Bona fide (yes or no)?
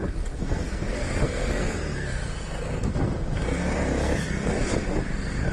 no